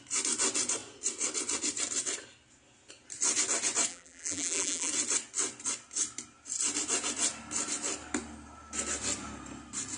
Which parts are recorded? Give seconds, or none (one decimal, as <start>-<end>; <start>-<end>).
0.0-3.9; 4.9-10.0

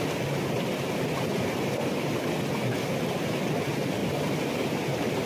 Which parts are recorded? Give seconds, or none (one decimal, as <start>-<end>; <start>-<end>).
0.0-4.0